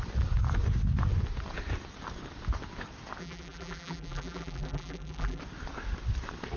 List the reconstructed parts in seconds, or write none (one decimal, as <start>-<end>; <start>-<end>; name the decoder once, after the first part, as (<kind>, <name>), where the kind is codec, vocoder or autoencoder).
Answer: 3.2-5.4 (vocoder, BigVGAN v2)